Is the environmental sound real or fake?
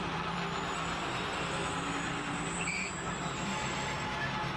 fake